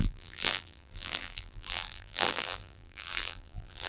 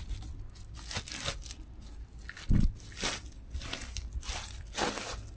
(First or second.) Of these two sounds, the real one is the second